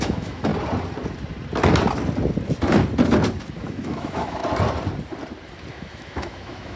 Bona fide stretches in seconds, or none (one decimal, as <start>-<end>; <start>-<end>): 0.5-3.6; 4.4-5.7